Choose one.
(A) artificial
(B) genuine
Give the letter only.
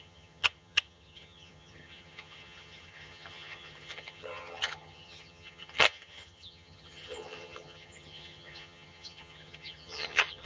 A